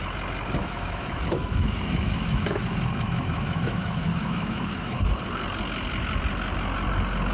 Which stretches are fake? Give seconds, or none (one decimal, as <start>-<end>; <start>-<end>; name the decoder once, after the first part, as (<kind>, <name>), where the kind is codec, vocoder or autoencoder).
0.6-5.0 (autoencoder, DAC-VAE)